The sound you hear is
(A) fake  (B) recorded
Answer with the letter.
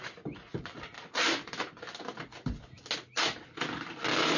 B